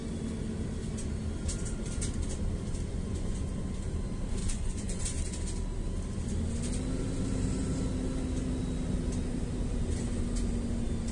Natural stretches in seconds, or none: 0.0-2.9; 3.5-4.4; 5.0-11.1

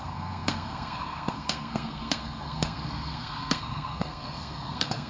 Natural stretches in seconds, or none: none

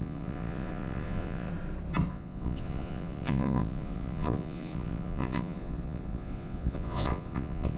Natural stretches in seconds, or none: 1.5-2.1

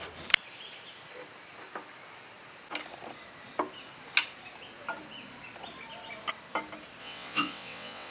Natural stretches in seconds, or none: 0.0-7.0

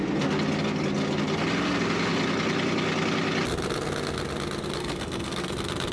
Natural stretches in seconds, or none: 0.0-4.8; 5.5-5.9

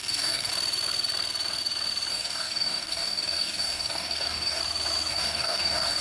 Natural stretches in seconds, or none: 0.5-2.1; 4.6-5.1

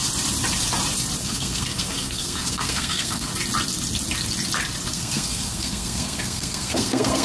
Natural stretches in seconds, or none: 0.0-1.2; 3.3-4.9

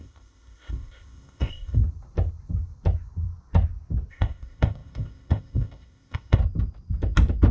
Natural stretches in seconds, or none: 1.8-4.1; 6.4-7.5